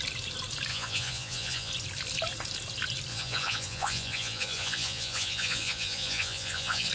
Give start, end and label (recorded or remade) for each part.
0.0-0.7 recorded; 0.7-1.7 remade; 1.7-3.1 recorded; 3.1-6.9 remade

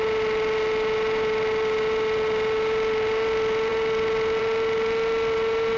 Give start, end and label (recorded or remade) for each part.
0.0-5.8 recorded

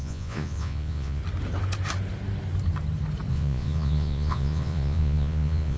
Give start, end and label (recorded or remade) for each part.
0.0-1.2 remade; 1.2-3.3 recorded; 3.3-5.8 remade

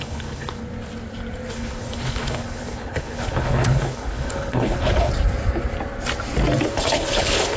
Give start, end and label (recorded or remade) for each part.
0.0-0.6 remade; 0.6-1.5 recorded; 1.5-5.1 remade; 5.1-6.7 recorded; 6.7-7.6 remade

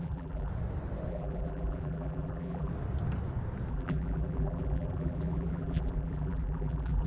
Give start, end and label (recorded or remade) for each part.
0.0-0.5 remade; 0.5-1.1 recorded; 1.1-2.7 remade; 2.7-3.7 recorded; 3.7-7.1 remade

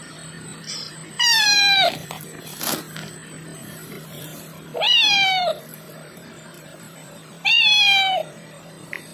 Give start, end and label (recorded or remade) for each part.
0.0-0.5 recorded; 0.5-2.7 remade; 2.7-3.5 recorded; 3.5-8.6 remade; 8.6-9.1 recorded

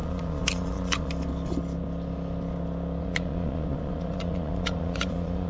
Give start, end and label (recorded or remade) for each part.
0.0-1.1 remade; 1.1-3.0 recorded; 3.0-5.5 remade

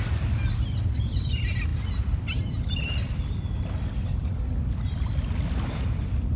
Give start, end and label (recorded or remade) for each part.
0.0-6.4 recorded